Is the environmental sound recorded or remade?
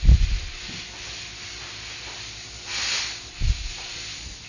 recorded